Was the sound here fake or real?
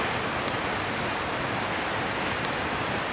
real